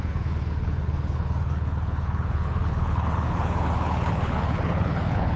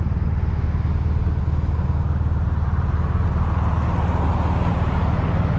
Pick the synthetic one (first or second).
first